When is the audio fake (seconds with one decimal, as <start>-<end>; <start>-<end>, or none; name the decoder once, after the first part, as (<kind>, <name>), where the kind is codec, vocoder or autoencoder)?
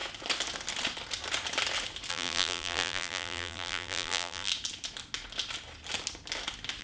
2.1-4.5 (vocoder, BigVGAN v2)